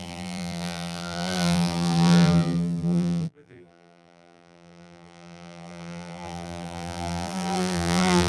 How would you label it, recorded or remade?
remade